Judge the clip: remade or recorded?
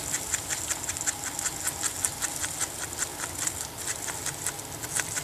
recorded